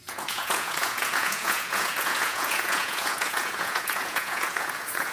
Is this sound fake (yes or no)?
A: yes